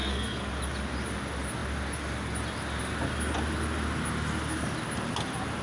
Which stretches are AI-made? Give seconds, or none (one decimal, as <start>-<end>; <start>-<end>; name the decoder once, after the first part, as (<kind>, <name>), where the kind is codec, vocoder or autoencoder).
0.0-0.5 (codec, SNAC)